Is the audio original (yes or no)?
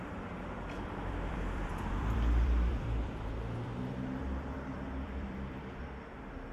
no